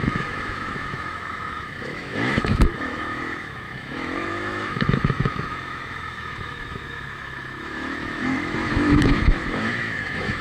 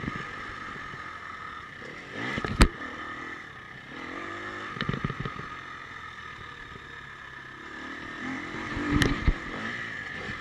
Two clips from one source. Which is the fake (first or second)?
first